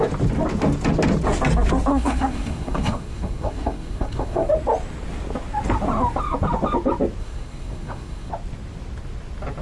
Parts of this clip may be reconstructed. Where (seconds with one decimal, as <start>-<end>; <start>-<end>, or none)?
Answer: 1.9-4.5; 7.2-8.3